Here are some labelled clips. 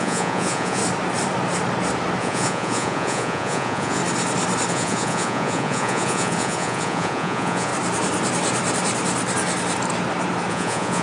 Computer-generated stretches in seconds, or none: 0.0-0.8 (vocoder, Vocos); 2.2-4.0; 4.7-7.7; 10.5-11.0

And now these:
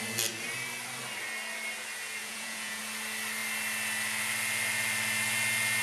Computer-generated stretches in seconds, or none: 2.2-2.8 (vocoder, Vocos)

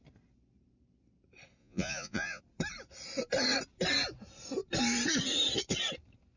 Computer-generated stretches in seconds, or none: 1.6-2.4 (vocoder, Vocos)

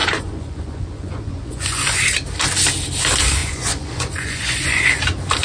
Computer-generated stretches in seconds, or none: 0.0-2.0 (vocoder, Vocos); 3.4-5.0

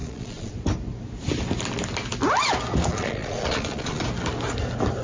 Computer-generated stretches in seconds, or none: 0.0-0.5 (vocoder, Vocos); 2.9-4.0

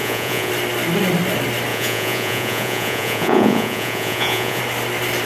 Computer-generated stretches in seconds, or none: 0.0-0.5 (vocoder, Vocos); 1.7-4.6